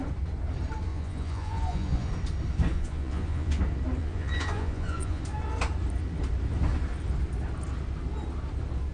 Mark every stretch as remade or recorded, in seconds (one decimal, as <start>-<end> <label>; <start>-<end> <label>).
0.0-0.9 recorded; 0.9-2.1 remade; 2.1-2.7 recorded; 2.7-3.6 remade; 3.6-4.0 recorded; 4.0-5.2 remade; 5.2-8.9 recorded